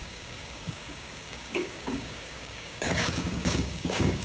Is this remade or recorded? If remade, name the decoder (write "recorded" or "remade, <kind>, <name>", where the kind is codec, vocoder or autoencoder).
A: remade, codec, DAC